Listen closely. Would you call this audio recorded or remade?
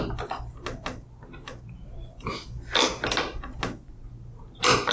recorded